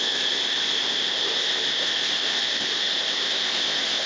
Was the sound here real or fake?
fake